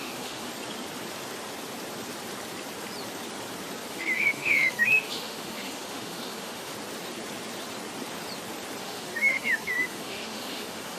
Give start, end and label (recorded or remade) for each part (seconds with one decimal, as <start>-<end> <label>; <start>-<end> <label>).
0.0-0.5 remade; 0.5-3.9 recorded; 3.9-6.7 remade; 6.7-8.8 recorded; 8.8-11.0 remade

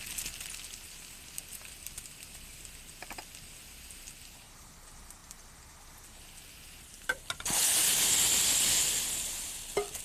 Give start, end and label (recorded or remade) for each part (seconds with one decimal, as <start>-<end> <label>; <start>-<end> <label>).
0.0-10.0 recorded

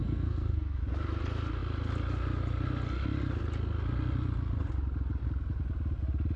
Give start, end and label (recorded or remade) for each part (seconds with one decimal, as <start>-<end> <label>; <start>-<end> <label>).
0.0-0.8 remade; 0.8-6.4 recorded

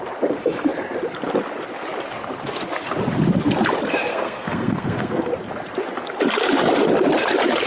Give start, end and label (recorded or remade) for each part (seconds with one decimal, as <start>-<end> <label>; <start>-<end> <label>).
0.0-4.1 recorded; 4.1-5.3 remade; 5.3-7.7 recorded

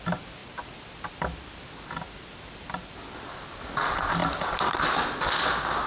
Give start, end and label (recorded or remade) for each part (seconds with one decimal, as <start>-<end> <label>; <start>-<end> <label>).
0.0-5.9 recorded

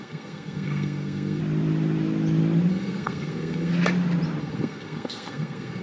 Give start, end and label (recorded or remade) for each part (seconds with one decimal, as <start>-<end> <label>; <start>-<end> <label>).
0.0-1.4 remade; 1.4-2.7 recorded; 2.7-3.7 remade; 3.7-4.4 recorded; 4.4-5.8 remade

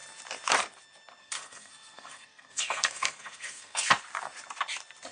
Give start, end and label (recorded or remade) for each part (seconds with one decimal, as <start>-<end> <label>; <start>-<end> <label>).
0.0-1.2 recorded; 1.2-3.9 remade; 3.9-5.1 recorded